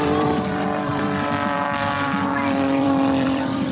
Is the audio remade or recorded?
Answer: remade